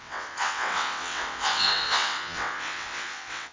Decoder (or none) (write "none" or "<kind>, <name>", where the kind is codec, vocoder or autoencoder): vocoder, WaveNeXt